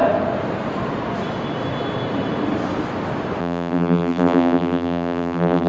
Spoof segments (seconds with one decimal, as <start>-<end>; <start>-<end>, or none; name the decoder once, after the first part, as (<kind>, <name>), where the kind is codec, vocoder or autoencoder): 3.4-5.7 (vocoder, BigVGAN v2)